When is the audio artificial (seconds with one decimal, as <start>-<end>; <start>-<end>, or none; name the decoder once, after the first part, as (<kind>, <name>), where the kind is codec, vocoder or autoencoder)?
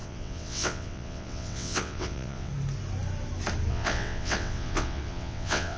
0.0-2.5 (vocoder, WaveNeXt); 3.7-5.8